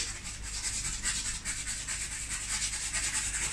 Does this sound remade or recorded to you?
recorded